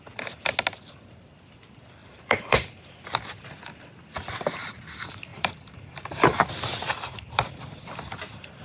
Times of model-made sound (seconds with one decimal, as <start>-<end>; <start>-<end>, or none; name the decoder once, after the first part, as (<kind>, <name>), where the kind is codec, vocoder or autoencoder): 2.0-2.8 (vocoder, BigVGAN v2); 5.3-6.4